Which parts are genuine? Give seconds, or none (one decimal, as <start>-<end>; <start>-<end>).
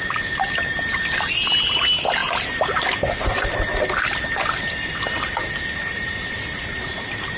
0.0-7.4